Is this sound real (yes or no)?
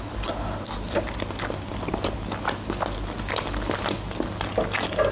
yes